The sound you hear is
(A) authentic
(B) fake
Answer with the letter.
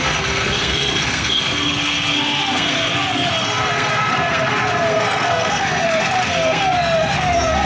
B